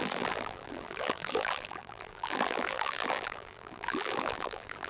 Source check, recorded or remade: remade